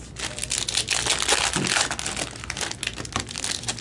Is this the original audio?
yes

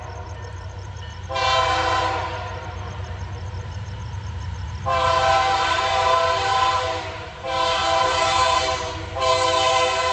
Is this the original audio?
no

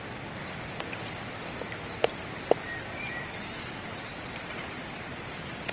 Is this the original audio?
yes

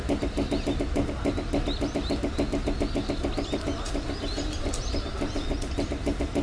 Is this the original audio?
yes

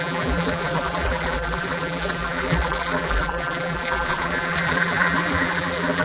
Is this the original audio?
no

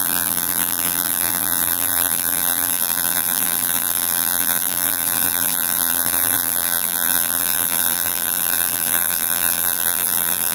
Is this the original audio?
no